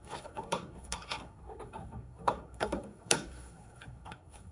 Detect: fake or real fake